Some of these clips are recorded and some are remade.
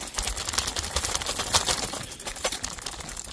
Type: recorded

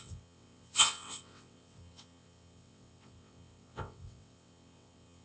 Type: remade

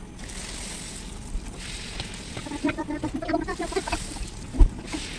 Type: recorded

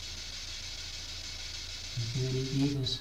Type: recorded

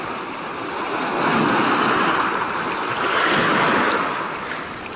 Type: recorded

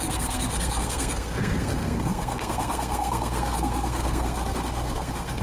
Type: remade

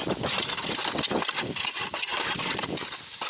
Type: recorded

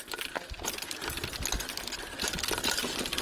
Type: recorded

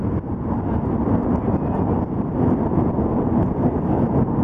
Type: recorded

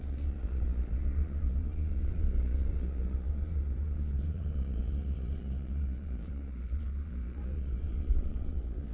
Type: remade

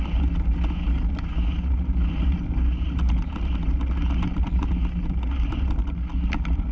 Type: recorded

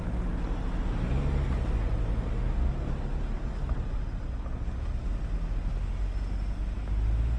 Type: recorded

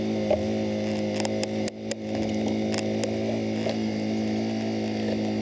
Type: recorded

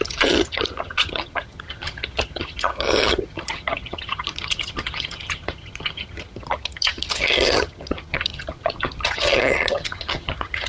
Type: remade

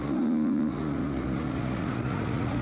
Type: remade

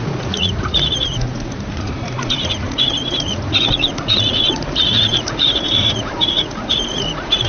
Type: remade